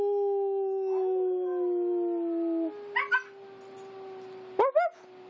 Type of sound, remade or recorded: recorded